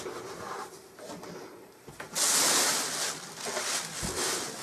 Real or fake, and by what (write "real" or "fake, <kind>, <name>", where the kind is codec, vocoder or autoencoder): real